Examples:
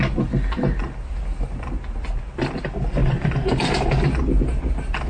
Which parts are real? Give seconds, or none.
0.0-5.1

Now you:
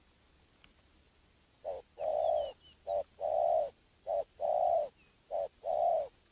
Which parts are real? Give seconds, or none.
0.0-6.3

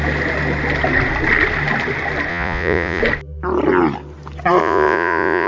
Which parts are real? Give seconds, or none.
0.0-2.3; 3.0-4.6

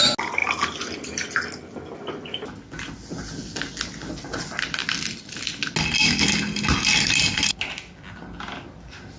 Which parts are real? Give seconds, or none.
0.0-9.2

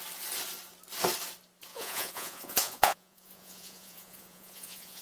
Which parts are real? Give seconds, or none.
0.0-1.7

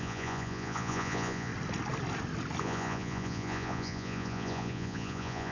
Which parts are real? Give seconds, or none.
1.5-2.6

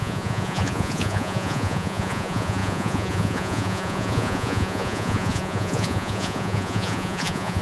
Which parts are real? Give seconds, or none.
none

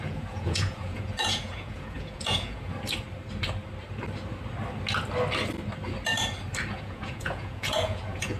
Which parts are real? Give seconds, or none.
2.7-6.7